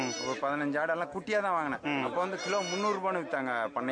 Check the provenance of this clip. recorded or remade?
recorded